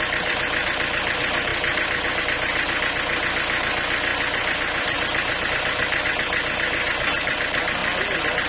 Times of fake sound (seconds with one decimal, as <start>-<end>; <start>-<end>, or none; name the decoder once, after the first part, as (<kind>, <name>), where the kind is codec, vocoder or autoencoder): none